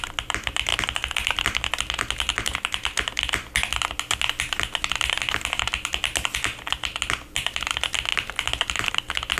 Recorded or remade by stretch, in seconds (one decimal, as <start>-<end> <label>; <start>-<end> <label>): 0.0-8.1 recorded; 8.1-8.9 remade; 8.9-9.4 recorded